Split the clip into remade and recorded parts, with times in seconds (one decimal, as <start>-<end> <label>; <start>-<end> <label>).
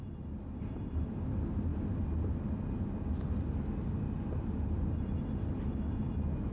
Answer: 0.0-6.5 recorded